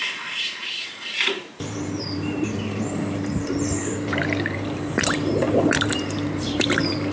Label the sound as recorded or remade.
remade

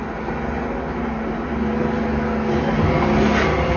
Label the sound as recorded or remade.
recorded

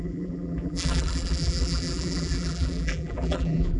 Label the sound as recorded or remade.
remade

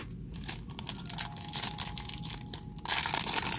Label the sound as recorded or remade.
recorded